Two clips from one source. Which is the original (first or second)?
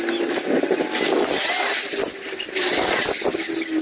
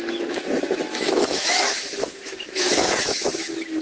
first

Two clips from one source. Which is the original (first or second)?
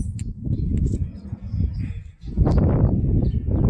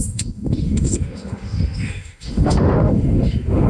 first